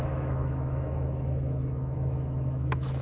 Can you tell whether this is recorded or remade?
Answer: remade